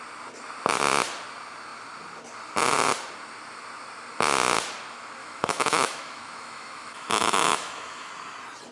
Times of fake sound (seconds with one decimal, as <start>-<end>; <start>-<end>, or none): 5.2-8.1